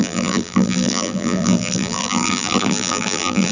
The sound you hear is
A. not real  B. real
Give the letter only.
A